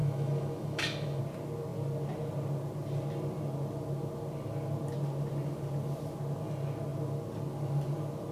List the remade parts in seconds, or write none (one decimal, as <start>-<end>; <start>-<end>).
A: 0.0-1.2